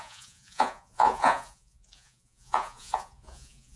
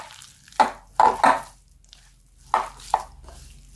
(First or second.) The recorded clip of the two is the second